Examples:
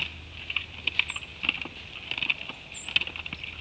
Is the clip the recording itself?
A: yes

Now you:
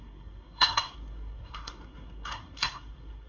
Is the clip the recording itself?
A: no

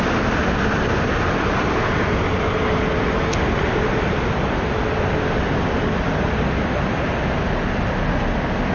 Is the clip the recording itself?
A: yes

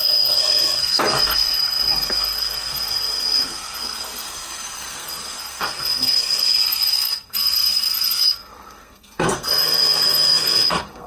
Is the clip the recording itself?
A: no